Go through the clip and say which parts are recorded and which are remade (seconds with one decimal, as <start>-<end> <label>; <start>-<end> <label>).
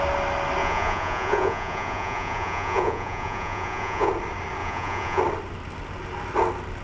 0.0-0.6 recorded; 0.6-4.1 remade; 4.1-4.6 recorded; 4.6-5.2 remade; 5.2-6.8 recorded